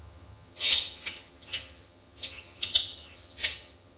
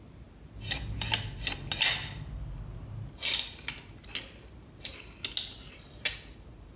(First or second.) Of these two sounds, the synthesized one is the first